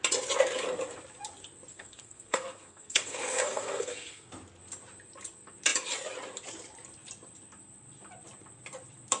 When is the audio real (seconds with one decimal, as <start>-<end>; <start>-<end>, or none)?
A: 0.0-1.7; 4.3-9.2